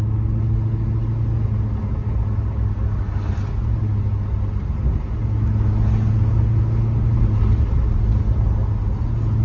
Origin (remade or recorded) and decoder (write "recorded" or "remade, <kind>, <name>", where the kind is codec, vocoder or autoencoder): recorded